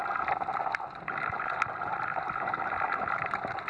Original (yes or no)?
yes